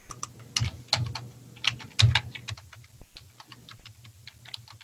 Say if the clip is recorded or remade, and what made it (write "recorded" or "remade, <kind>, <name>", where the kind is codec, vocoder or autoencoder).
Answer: recorded